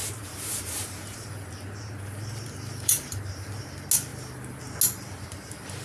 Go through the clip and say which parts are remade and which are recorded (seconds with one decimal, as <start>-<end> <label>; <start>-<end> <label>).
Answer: 0.0-3.5 remade; 3.5-5.8 recorded